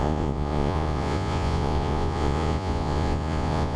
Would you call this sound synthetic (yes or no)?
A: yes